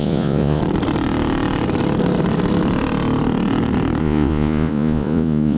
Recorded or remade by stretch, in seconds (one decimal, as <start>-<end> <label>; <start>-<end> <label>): 0.0-0.6 remade; 0.6-4.0 recorded; 4.0-5.6 remade

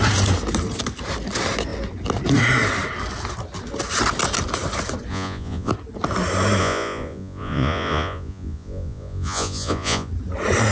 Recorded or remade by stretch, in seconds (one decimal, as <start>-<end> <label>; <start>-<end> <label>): 0.0-5.1 recorded; 5.1-5.7 remade; 5.7-6.6 recorded; 6.6-10.1 remade; 10.1-10.7 recorded

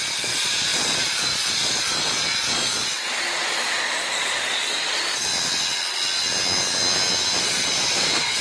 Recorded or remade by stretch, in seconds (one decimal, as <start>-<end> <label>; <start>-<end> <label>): 0.0-5.3 remade; 5.3-7.4 recorded; 7.4-8.4 remade

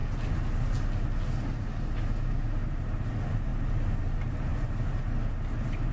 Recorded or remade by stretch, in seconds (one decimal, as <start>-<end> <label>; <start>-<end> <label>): 0.0-5.9 recorded

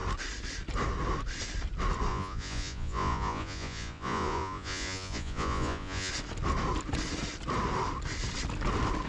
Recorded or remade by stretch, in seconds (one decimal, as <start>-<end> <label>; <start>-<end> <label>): 0.0-2.1 recorded; 2.1-6.1 remade; 6.1-9.1 recorded

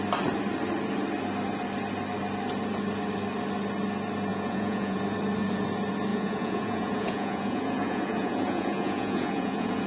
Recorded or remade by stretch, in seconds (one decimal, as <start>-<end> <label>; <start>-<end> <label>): 0.0-4.3 recorded; 4.3-5.0 remade; 5.0-6.1 recorded; 6.1-9.9 remade

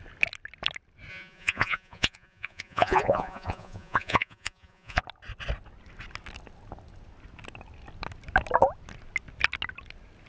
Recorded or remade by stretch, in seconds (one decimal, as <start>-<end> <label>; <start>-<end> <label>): 0.0-1.1 recorded; 1.1-5.0 remade; 5.0-10.3 recorded

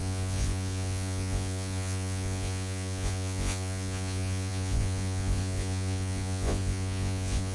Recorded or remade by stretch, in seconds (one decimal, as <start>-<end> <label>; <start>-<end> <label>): 0.0-7.5 remade